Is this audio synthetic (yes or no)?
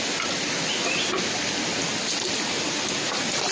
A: no